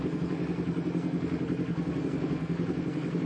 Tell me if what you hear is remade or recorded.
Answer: remade